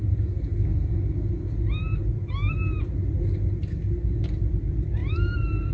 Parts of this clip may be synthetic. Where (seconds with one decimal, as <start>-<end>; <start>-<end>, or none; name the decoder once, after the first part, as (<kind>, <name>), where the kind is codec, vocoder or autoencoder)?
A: none